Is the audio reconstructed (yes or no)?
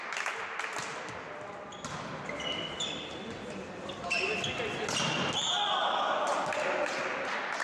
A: no